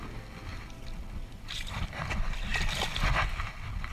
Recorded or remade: recorded